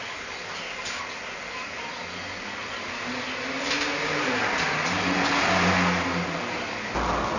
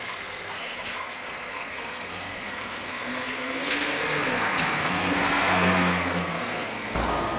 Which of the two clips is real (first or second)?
first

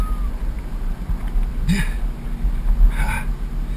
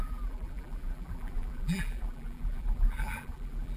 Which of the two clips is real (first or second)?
first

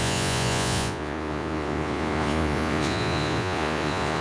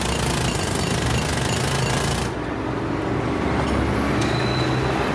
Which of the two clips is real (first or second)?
second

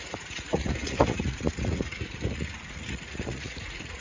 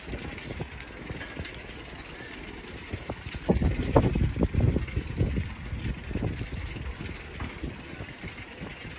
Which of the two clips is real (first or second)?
second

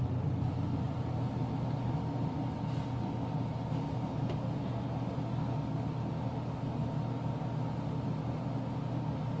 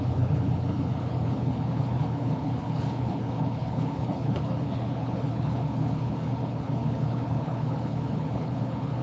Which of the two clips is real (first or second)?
first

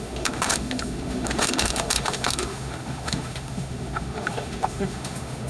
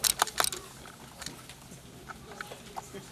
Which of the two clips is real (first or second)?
second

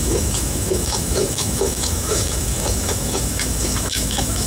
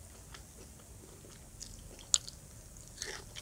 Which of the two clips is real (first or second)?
second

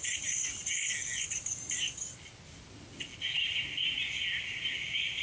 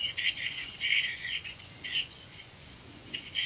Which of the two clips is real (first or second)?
first